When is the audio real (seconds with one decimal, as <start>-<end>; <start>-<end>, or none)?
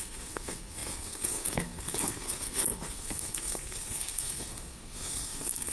none